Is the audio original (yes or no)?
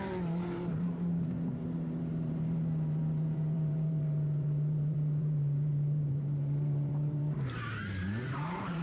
no